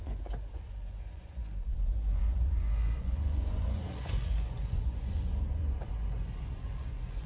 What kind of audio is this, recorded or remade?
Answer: remade